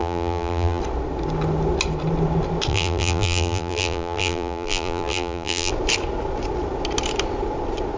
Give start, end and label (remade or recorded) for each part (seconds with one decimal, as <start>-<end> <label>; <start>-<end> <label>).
0.0-0.8 remade; 0.8-2.7 recorded; 2.7-5.7 remade; 5.7-8.0 recorded